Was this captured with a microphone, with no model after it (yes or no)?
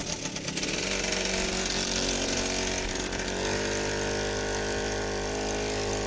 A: yes